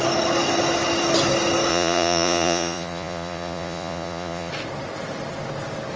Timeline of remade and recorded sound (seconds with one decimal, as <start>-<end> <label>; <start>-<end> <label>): 0.0-1.7 recorded; 1.7-4.5 remade; 4.5-6.0 recorded